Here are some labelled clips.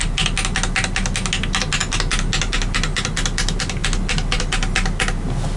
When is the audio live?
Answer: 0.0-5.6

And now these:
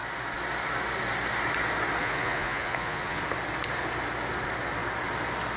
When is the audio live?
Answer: 0.0-2.0; 3.2-5.6